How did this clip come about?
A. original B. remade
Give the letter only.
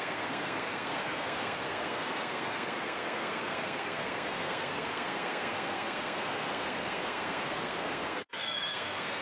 B